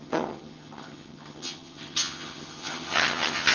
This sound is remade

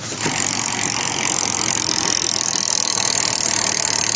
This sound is recorded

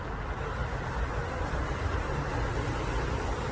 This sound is recorded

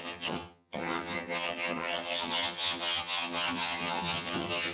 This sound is remade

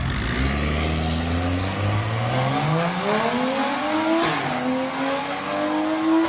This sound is recorded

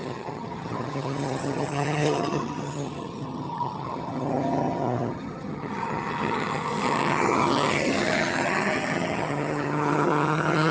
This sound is remade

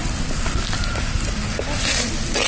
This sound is recorded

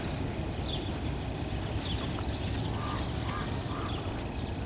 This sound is recorded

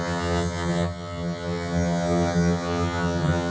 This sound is remade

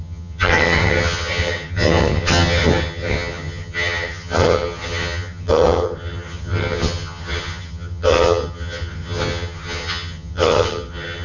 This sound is remade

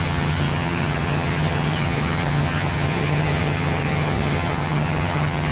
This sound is remade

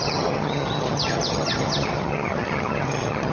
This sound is remade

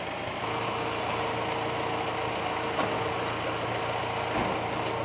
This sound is recorded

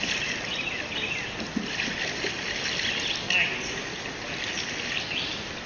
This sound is recorded